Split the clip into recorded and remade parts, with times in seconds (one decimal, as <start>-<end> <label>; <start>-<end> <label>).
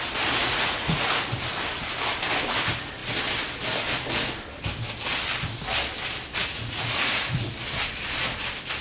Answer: 0.0-0.4 recorded; 0.4-1.2 remade; 1.2-6.4 recorded; 6.4-7.5 remade; 7.5-8.8 recorded